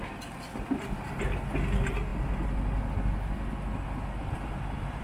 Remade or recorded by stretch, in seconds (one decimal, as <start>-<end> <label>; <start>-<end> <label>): 0.0-5.0 recorded